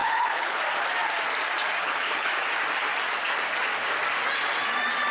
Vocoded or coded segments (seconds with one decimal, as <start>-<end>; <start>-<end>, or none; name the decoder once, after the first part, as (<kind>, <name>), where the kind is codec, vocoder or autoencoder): 0.0-0.6 (codec, HILCodec); 1.8-2.3